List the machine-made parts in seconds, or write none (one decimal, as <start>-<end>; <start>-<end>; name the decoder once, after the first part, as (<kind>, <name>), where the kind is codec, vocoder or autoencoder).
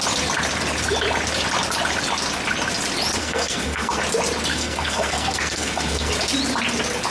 3.2-4.0 (codec, SNAC); 4.5-6.1